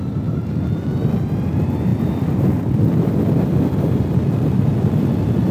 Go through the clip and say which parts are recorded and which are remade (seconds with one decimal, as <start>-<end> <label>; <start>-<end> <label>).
0.0-1.9 recorded; 1.9-5.5 remade